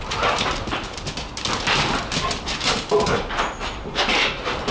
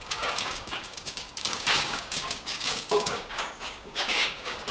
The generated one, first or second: second